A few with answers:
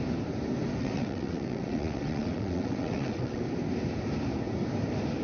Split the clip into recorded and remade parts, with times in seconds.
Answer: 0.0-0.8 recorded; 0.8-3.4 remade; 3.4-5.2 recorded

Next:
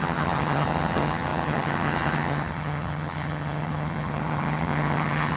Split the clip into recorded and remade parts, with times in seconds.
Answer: 0.0-5.4 remade

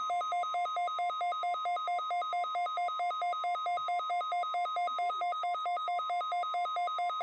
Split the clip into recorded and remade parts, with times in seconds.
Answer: 0.0-5.1 recorded; 5.1-6.0 remade; 6.0-7.2 recorded

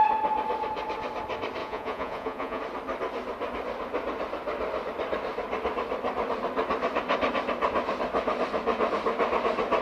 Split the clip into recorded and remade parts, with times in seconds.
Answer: 0.0-1.6 recorded; 1.6-2.6 remade; 2.6-9.8 recorded

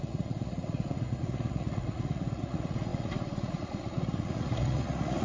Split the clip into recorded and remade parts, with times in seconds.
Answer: 0.0-5.2 remade

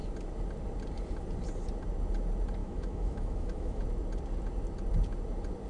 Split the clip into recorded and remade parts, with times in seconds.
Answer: 0.0-2.6 recorded; 2.6-3.8 remade; 3.8-5.7 recorded

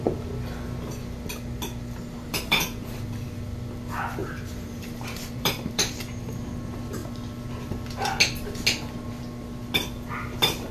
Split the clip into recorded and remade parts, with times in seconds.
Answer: 0.0-2.3 recorded; 2.3-2.9 remade; 2.9-4.2 recorded; 4.2-6.0 remade; 6.0-10.7 recorded